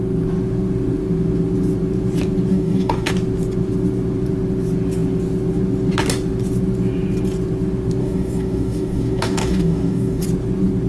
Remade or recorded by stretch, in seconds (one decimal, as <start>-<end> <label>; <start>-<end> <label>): 0.0-2.5 recorded; 2.5-3.1 remade; 3.1-8.0 recorded; 8.0-10.2 remade; 10.2-10.9 recorded